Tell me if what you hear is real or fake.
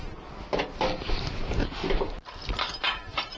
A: real